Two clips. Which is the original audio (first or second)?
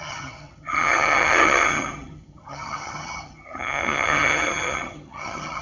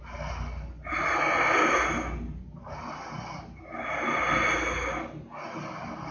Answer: second